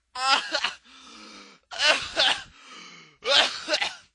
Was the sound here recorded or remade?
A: recorded